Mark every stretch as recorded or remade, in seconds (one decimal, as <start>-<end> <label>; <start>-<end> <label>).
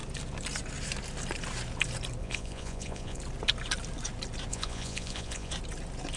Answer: 0.0-2.2 recorded; 2.2-3.2 remade; 3.2-4.5 recorded; 4.5-5.5 remade; 5.5-6.2 recorded